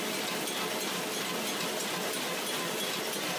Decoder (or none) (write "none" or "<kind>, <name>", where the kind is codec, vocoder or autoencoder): none